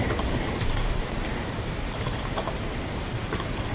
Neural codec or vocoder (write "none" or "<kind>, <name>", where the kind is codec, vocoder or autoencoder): vocoder, BigVGAN v2